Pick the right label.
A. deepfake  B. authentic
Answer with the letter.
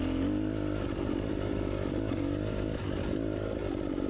B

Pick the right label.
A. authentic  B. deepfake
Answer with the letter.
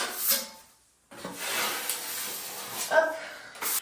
A